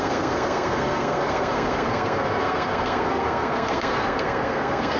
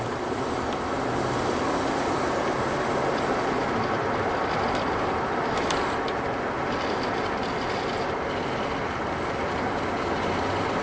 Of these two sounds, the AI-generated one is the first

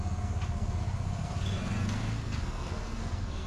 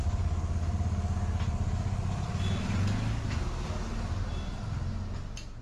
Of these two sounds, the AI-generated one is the first